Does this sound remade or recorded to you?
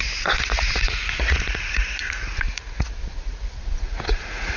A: remade